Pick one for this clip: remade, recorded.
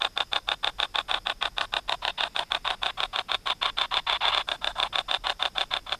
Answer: recorded